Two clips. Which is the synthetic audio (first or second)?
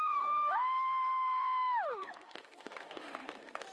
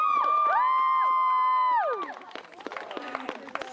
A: first